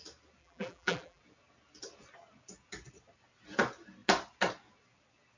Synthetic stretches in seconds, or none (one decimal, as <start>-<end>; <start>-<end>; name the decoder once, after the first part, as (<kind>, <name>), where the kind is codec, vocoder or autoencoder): 0.4-1.2 (vocoder, BigVGAN v2)